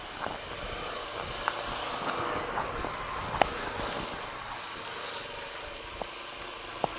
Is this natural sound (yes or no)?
yes